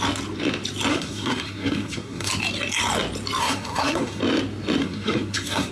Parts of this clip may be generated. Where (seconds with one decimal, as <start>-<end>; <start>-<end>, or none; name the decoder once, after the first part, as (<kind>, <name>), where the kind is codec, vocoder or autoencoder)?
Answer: 0.9-2.3 (codec, SNAC); 3.4-4.2; 4.8-5.7